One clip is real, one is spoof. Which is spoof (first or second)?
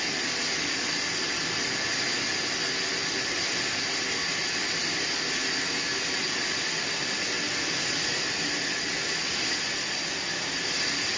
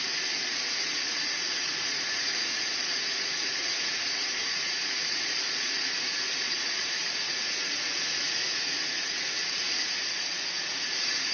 second